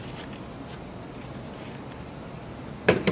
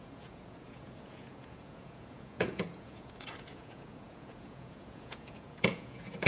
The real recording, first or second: first